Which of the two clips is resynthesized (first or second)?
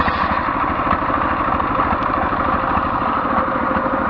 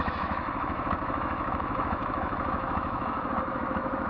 second